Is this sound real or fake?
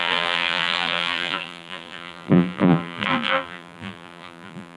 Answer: fake